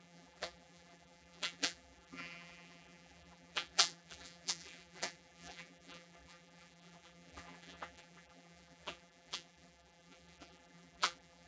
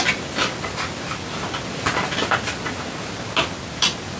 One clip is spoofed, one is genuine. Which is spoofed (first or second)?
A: first